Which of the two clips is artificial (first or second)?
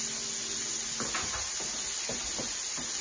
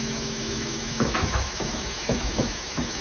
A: second